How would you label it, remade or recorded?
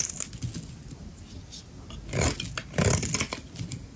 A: recorded